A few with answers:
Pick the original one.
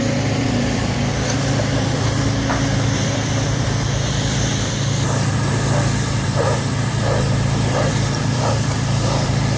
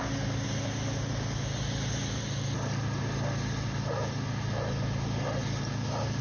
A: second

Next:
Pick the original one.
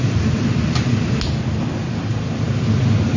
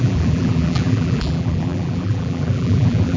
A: first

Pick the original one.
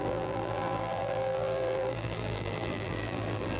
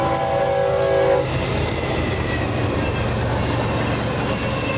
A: second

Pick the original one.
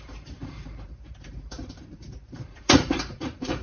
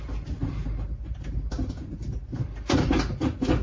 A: second